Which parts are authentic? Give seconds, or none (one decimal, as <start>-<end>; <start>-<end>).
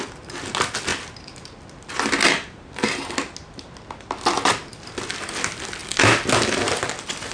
0.0-7.3